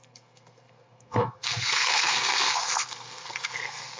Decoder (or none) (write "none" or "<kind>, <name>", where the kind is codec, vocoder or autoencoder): codec, SNAC